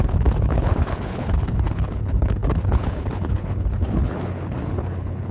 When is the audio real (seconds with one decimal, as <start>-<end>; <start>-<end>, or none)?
none

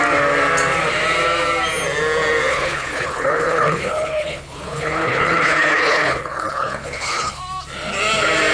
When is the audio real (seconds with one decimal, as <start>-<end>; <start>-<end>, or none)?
0.0-2.5; 7.4-8.5

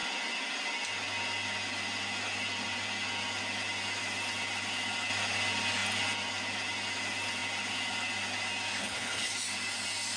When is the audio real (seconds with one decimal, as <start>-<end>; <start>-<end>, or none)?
0.0-8.8; 9.3-10.2